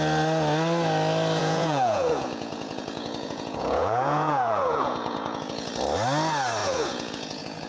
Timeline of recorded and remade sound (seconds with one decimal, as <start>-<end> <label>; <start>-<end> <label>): 0.0-1.4 recorded; 1.4-5.7 remade; 5.7-6.6 recorded; 6.6-7.7 remade